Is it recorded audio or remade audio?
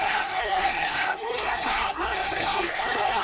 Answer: remade